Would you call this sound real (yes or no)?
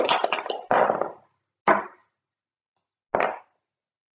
yes